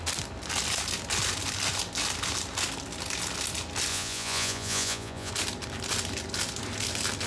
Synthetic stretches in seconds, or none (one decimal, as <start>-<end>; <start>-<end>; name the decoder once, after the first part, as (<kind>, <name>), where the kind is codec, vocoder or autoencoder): 3.9-5.3 (vocoder, Vocos)